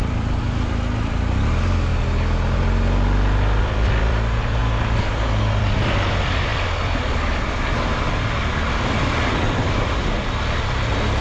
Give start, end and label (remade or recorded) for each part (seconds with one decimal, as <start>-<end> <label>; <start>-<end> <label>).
0.0-1.9 remade; 1.9-3.6 recorded; 3.6-4.6 remade; 4.6-5.4 recorded; 5.4-11.2 remade